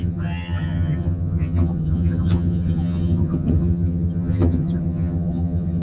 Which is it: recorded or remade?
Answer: remade